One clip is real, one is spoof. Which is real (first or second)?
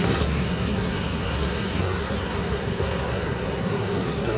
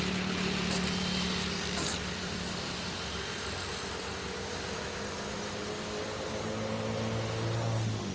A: second